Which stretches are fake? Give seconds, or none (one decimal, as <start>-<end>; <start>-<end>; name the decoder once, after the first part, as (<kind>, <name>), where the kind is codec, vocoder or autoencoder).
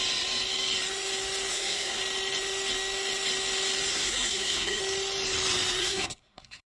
1.5-2.0 (codec, SNAC); 3.9-4.8; 5.8-6.7